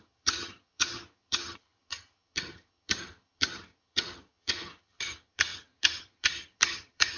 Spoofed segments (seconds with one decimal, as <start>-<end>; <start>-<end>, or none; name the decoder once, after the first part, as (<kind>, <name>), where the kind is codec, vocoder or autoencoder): 0.0-7.2 (vocoder, HiFi-GAN)